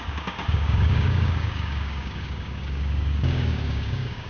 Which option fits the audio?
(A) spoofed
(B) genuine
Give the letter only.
A